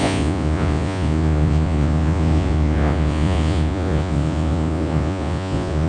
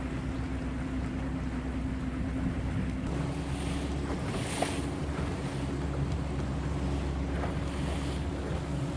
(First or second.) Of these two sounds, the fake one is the first